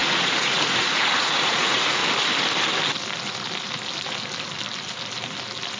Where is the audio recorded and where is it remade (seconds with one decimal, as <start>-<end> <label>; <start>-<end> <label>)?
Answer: 0.0-2.0 remade; 2.0-5.8 recorded